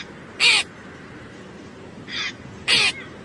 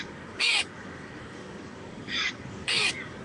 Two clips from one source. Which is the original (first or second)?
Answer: first